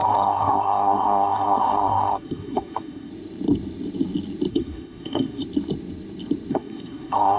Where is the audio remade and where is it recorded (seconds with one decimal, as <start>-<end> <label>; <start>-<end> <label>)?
0.0-3.1 remade; 3.1-4.5 recorded; 4.5-5.4 remade; 5.4-6.5 recorded; 6.5-7.4 remade